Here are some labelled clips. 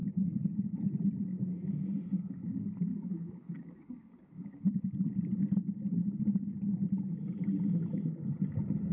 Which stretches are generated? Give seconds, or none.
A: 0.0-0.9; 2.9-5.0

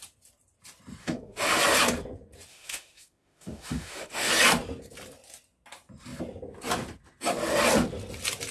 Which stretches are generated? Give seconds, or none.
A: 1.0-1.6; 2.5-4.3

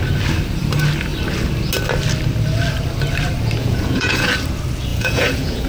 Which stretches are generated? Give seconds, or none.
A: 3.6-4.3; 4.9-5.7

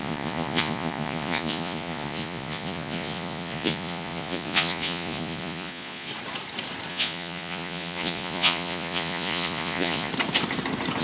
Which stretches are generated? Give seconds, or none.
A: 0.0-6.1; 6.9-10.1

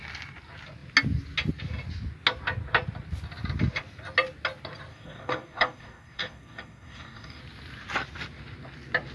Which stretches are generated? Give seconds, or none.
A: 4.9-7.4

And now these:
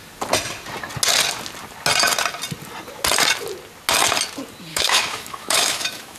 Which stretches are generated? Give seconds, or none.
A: 4.7-6.2